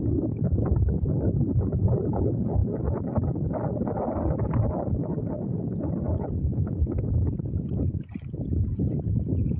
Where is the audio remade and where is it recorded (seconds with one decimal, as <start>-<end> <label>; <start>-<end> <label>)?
0.0-1.5 recorded; 1.5-2.2 remade; 2.2-9.6 recorded